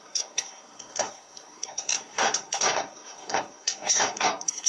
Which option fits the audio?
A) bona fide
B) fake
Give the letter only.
B